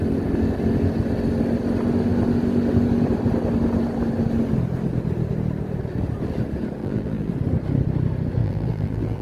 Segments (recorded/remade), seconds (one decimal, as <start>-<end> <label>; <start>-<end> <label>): 0.0-6.8 recorded; 6.8-7.3 remade; 7.3-8.4 recorded; 8.4-9.2 remade